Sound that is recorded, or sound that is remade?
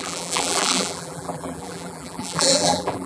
remade